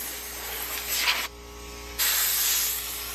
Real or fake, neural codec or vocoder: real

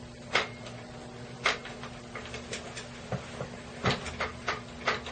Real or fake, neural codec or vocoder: real